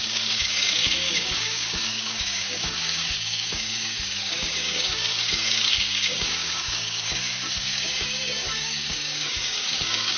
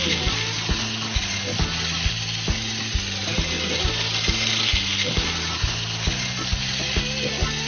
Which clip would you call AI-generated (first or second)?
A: first